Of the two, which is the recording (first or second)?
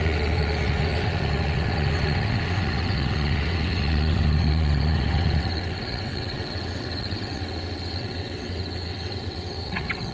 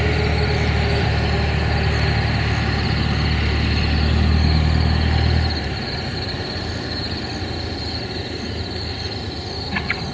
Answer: second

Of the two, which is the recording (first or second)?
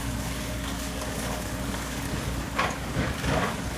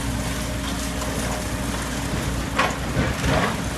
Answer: second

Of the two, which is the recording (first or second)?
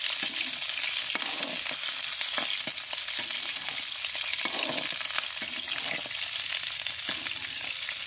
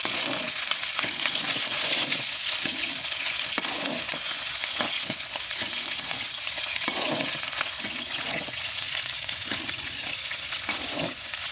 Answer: first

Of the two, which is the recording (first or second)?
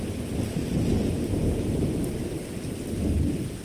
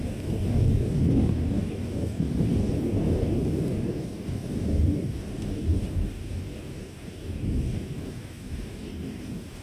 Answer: first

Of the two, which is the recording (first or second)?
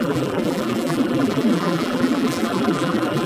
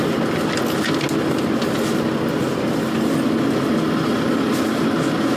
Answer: second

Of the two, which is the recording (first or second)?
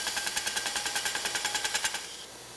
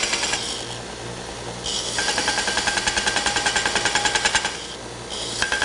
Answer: second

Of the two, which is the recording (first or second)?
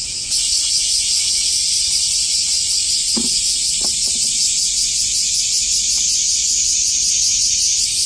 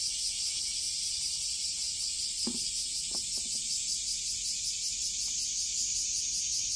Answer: second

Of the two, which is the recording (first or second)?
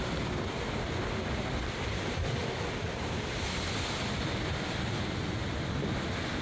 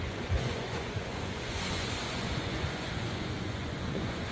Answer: first